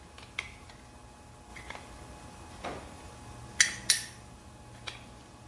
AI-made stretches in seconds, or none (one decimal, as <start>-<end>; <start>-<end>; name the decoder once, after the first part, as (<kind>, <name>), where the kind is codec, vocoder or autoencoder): none